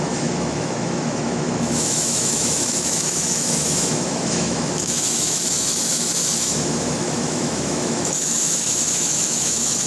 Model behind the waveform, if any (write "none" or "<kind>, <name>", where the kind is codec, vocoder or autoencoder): autoencoder, DAC-VAE